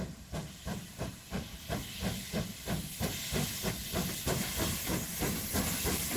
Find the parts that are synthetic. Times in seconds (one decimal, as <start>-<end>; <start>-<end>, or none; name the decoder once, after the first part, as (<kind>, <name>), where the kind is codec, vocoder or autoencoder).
none